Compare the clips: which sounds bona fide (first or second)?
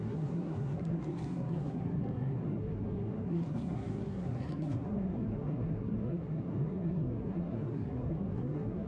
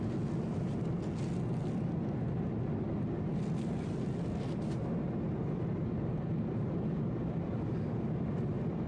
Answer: second